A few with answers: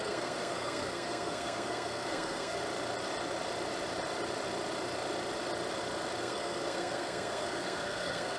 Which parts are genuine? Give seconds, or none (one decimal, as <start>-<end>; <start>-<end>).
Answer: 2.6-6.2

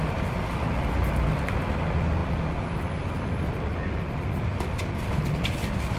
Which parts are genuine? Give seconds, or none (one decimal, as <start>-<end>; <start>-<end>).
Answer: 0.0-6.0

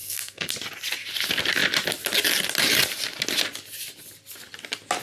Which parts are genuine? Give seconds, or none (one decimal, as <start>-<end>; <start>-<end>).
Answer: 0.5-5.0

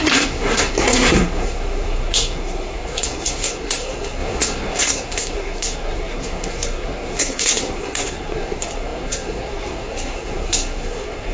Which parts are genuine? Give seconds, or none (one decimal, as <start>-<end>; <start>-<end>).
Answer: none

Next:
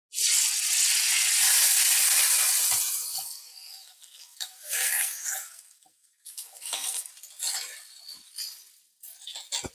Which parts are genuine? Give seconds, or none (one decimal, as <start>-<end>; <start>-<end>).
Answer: 0.0-3.1; 7.1-9.7